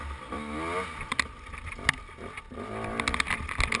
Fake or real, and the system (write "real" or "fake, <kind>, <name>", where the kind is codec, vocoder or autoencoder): real